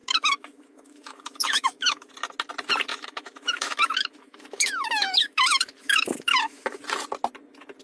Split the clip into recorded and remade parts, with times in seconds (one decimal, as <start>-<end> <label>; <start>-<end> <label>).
0.0-2.1 remade; 2.1-2.9 recorded; 2.9-6.8 remade; 6.8-7.8 recorded